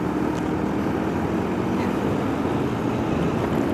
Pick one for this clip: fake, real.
real